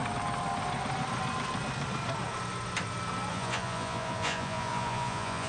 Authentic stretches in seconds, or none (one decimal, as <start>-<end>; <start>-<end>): 0.0-3.3